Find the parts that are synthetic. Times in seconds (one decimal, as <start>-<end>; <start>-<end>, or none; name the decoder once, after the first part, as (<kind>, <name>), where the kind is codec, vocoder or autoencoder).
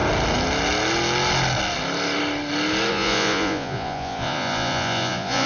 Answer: 2.9-5.5 (vocoder, Vocos)